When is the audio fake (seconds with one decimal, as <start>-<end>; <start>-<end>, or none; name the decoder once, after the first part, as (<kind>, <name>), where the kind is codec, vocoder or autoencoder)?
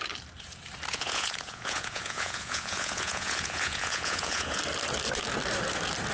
0.9-4.6 (vocoder, Vocos)